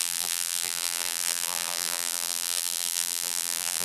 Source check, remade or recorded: remade